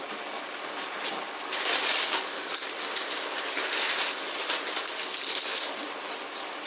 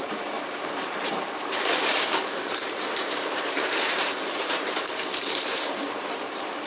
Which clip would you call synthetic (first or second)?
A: second